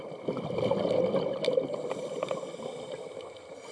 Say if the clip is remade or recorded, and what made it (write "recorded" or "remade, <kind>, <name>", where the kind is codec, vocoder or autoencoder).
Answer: remade, vocoder, BigVGAN v2